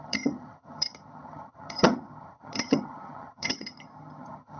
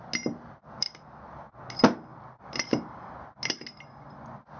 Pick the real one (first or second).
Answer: second